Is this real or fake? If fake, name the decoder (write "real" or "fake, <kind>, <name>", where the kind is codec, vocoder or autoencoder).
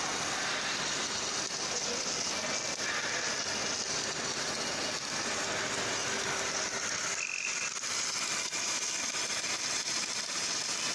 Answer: real